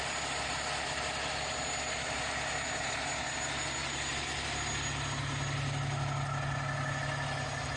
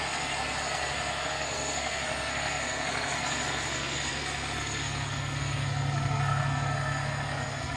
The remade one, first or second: second